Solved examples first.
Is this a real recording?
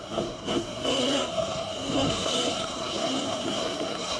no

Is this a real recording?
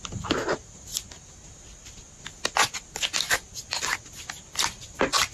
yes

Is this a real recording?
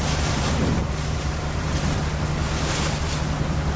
yes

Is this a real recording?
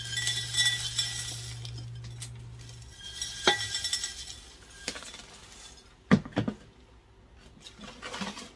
yes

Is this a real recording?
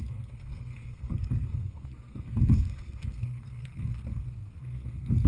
no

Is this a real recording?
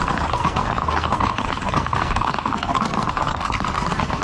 no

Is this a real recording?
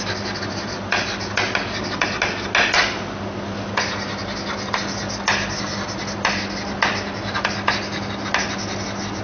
yes